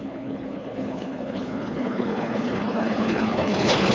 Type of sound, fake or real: fake